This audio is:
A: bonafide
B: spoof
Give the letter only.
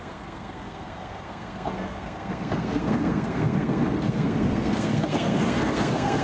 B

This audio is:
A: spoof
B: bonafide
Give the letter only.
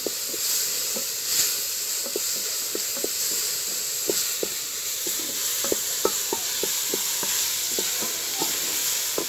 A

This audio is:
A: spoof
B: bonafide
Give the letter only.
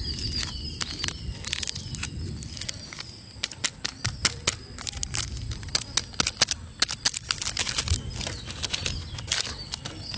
B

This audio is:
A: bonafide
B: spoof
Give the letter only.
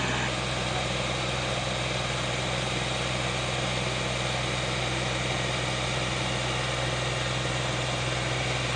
A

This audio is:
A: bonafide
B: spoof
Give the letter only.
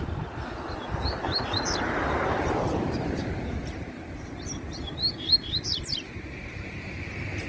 A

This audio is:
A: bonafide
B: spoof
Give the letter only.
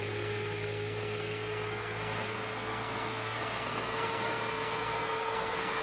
B